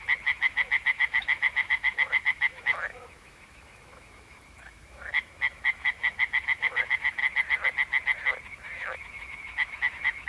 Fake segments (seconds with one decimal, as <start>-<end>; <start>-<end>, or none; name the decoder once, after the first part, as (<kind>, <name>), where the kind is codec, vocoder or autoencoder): 0.0-7.2 (autoencoder, DAC-VAE); 8.5-10.3